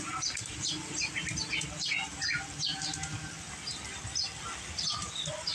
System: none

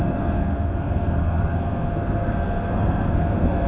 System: codec, SNAC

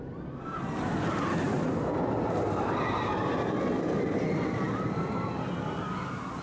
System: none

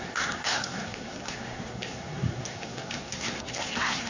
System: codec, SNAC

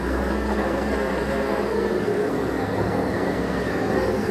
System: codec, SNAC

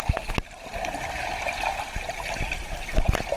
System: none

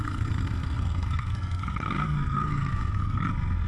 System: codec, SNAC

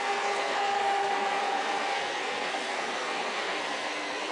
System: codec, SNAC